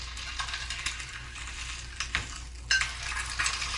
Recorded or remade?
recorded